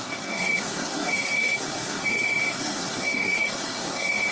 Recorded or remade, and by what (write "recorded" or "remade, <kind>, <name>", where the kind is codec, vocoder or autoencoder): remade, codec, SNAC